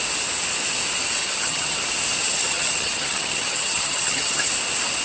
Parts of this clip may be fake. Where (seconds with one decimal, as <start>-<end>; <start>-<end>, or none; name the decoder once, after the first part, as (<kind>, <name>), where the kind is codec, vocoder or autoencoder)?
1.2-1.8 (vocoder, HiFi-GAN); 2.2-4.5